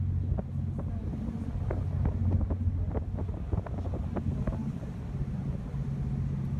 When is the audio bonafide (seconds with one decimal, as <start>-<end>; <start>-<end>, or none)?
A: 0.0-6.6